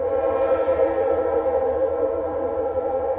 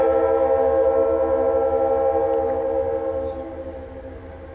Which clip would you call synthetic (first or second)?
first